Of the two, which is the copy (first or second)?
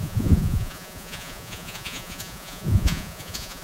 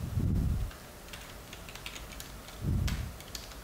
first